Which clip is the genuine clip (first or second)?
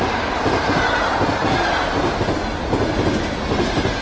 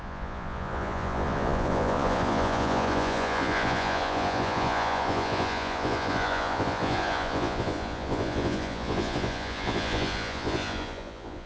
first